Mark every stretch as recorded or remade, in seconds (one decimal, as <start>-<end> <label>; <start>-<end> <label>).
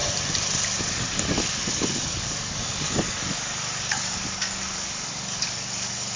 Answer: 0.0-0.8 recorded; 0.8-6.2 remade